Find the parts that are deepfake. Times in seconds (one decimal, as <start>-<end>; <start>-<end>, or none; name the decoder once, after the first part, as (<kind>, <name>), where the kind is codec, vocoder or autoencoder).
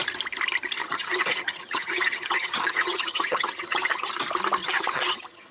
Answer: 0.8-4.1 (vocoder, HiFi-GAN); 4.6-5.5